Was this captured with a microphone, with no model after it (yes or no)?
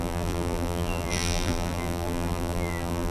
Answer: no